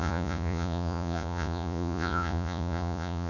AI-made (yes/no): yes